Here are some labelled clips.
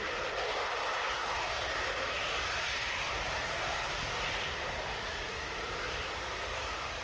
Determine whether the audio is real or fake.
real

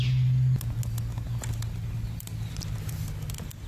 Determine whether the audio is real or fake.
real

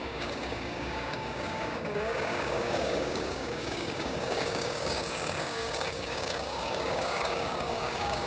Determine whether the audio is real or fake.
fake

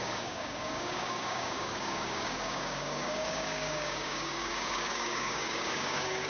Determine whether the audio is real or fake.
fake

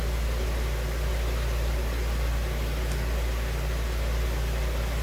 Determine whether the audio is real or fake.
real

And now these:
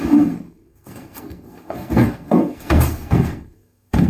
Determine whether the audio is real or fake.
fake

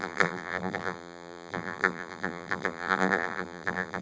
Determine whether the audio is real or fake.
fake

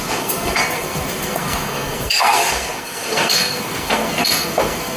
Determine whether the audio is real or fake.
fake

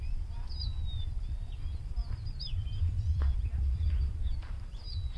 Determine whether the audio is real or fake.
fake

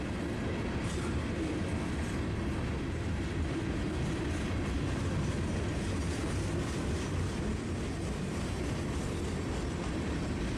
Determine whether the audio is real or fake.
real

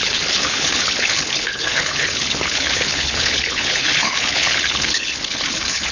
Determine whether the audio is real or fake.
fake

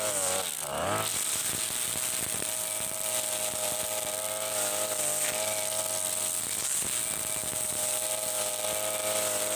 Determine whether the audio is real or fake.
real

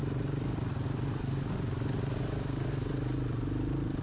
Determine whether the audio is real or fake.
real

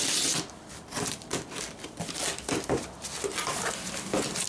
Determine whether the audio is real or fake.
real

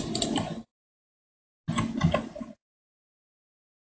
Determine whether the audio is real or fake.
real